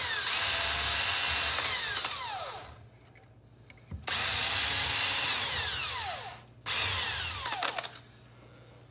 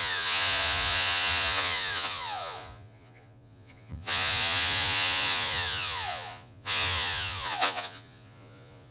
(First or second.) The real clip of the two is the first